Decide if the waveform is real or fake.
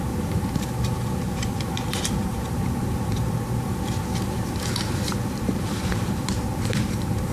fake